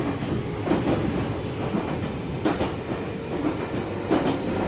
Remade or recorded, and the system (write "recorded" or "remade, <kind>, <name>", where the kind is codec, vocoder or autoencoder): recorded